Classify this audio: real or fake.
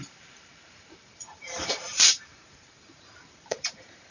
fake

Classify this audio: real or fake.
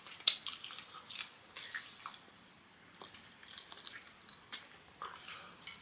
fake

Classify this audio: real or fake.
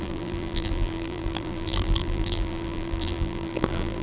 fake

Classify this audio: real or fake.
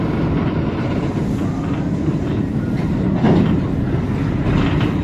fake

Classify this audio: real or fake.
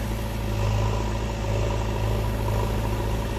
real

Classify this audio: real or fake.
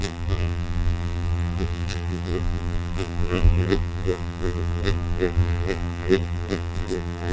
fake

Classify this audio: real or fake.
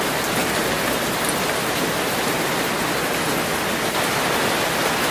real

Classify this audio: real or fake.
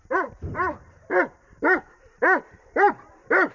fake